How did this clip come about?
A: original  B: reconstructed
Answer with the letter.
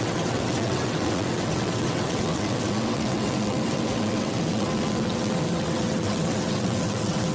B